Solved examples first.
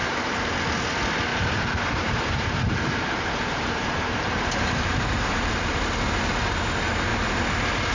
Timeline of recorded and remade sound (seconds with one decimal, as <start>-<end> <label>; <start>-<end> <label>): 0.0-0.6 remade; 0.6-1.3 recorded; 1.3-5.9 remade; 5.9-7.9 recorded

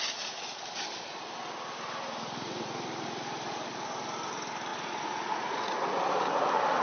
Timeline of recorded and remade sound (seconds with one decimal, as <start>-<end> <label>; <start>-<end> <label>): 0.0-4.7 recorded; 4.7-6.0 remade; 6.0-6.8 recorded

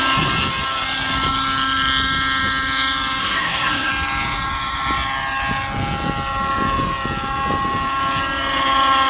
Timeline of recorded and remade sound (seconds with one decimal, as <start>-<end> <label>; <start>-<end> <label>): 0.0-3.2 recorded; 3.2-3.9 remade; 3.9-9.1 recorded

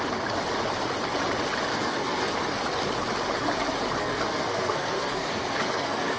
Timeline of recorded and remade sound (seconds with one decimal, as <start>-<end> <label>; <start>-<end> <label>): 0.0-1.7 recorded; 1.7-2.3 remade; 2.3-4.0 recorded; 4.0-6.2 remade